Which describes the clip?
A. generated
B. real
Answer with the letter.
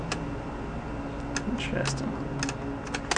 B